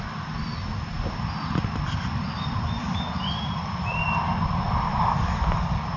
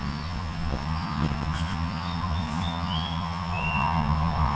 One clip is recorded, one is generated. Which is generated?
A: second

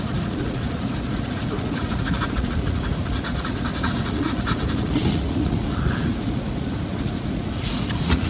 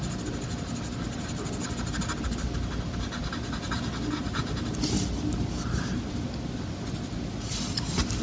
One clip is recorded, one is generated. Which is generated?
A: first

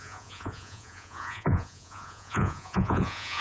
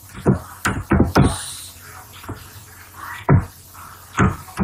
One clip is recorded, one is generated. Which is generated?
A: first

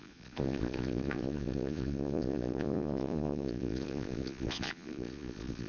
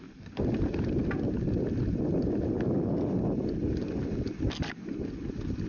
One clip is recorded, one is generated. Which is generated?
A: first